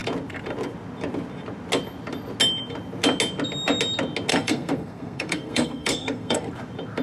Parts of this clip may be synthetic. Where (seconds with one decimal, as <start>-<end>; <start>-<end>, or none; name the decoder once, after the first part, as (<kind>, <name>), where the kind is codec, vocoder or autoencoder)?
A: 4.3-6.5 (codec, SNAC)